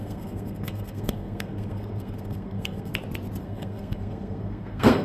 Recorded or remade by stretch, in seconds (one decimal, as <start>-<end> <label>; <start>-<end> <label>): 0.0-2.9 remade; 2.9-3.4 recorded; 3.4-5.0 remade